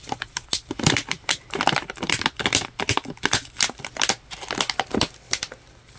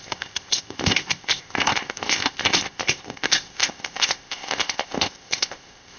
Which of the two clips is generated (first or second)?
second